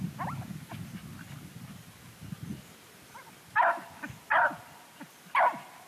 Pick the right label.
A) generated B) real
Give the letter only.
B